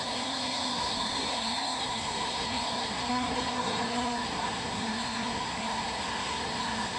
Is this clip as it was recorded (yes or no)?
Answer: no